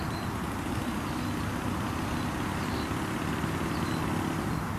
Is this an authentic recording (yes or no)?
yes